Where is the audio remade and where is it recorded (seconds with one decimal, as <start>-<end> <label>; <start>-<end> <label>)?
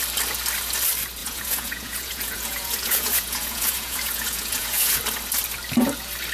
0.0-1.2 recorded; 1.2-5.0 remade; 5.0-6.3 recorded